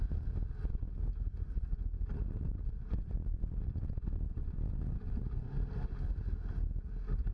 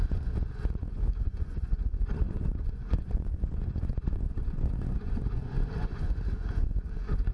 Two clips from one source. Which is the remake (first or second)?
second